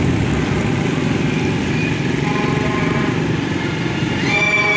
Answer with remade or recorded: recorded